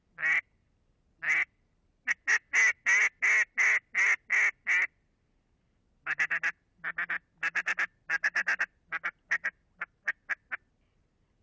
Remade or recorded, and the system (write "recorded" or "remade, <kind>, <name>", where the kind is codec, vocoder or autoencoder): recorded